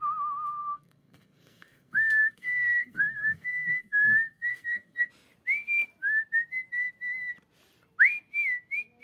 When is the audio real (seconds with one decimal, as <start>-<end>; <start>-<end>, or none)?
0.0-0.6; 5.1-9.0